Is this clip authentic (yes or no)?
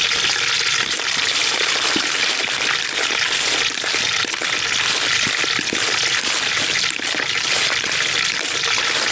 yes